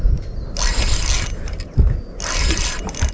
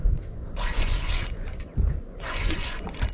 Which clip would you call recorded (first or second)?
first